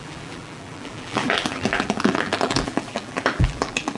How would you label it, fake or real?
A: fake